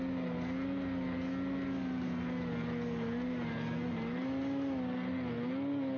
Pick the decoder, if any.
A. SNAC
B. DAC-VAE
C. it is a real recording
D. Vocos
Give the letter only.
C